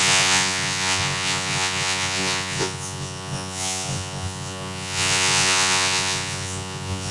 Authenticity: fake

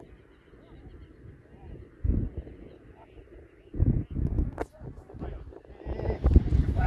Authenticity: real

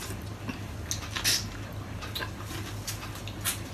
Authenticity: real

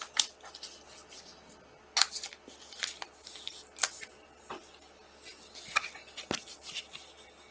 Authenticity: real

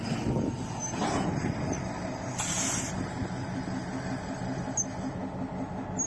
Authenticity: real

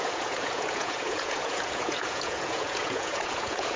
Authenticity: fake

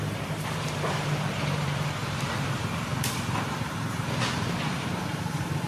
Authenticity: fake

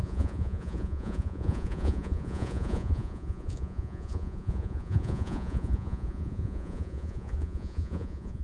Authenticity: fake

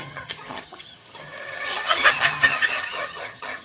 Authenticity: fake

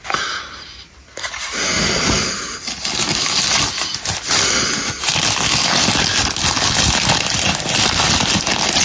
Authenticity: real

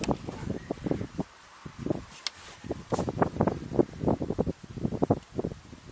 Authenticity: real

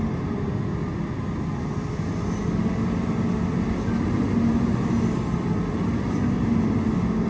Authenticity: real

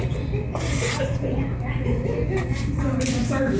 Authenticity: real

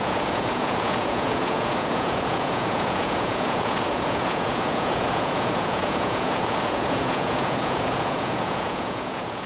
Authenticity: fake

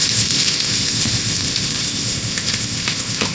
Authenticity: fake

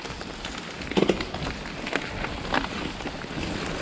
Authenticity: real